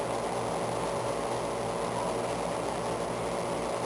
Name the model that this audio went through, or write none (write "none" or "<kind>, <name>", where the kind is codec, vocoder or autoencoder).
none